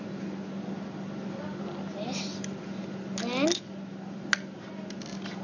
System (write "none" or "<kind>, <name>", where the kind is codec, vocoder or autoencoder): none